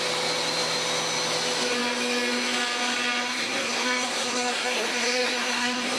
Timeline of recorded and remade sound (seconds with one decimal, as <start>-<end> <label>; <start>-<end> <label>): 0.0-3.3 recorded; 3.3-6.0 remade